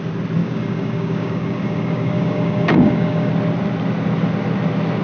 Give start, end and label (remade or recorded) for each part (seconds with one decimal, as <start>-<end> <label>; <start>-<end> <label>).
0.0-0.4 recorded; 0.4-3.3 remade; 3.3-5.0 recorded